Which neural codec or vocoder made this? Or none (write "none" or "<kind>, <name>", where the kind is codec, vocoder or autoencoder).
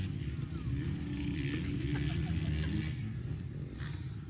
none